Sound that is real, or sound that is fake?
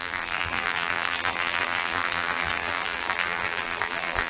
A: fake